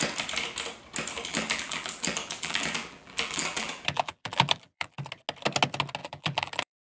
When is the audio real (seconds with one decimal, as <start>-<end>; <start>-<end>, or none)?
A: 0.0-1.3; 5.0-6.0